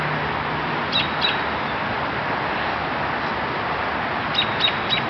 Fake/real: real